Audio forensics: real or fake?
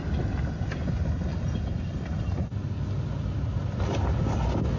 real